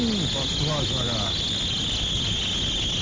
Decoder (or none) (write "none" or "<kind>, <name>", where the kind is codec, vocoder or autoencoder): none